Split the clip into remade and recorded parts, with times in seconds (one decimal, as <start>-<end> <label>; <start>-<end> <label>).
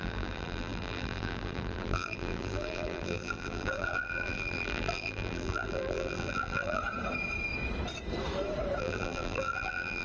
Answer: 0.0-6.8 remade; 6.8-8.8 recorded; 8.8-10.0 remade